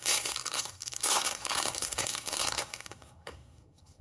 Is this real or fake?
fake